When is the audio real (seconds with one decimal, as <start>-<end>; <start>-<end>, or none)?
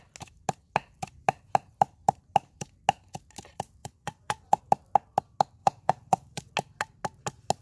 0.0-3.8; 4.6-5.6; 6.5-7.6